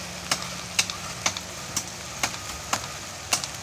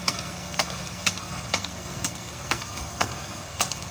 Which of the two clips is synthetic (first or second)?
second